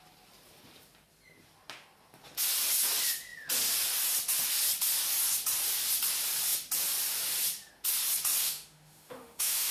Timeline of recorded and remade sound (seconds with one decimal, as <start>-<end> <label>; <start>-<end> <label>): 0.0-8.4 recorded; 8.4-9.7 remade